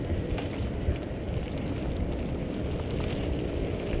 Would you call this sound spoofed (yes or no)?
no